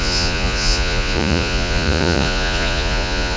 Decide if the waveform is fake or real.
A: fake